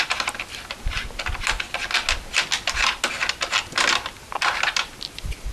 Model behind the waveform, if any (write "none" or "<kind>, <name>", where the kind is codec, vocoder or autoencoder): none